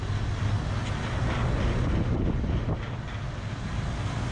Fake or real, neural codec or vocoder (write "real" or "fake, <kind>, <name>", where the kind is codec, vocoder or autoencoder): real